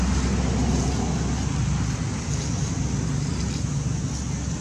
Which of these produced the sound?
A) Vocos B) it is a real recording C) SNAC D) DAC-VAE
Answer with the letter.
B